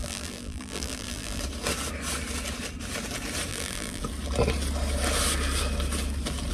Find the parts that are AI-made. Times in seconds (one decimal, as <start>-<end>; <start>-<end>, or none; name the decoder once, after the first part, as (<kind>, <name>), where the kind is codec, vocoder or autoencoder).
0.0-1.4 (vocoder, BigVGAN v2); 3.5-4.0